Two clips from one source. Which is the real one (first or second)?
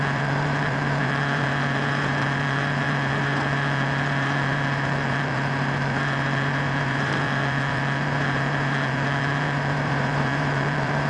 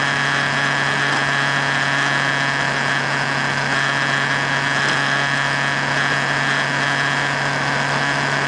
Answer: second